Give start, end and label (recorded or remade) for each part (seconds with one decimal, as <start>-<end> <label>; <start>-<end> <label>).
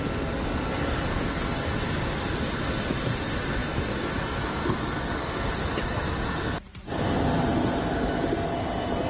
0.0-9.1 recorded